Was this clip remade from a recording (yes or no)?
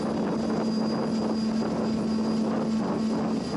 no